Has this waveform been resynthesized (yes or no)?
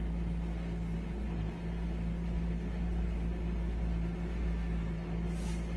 no